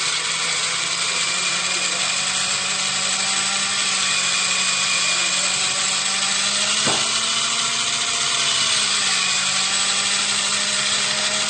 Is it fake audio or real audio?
real